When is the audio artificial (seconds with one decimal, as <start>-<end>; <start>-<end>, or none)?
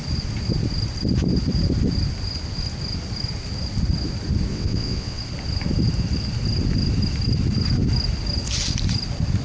4.5-5.2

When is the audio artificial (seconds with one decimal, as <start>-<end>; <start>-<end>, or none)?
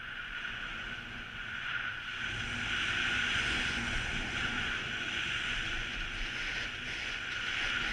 0.0-2.1; 2.9-7.9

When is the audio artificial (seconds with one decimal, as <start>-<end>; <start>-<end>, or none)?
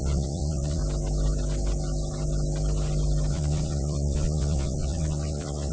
0.0-0.8; 3.3-5.7